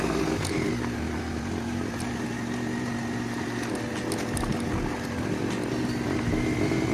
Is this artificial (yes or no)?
no